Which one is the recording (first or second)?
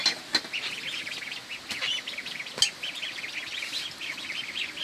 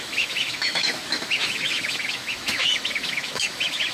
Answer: first